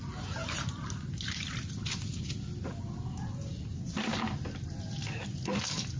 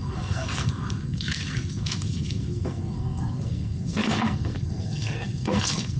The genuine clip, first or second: first